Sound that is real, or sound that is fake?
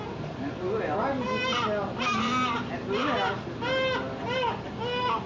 real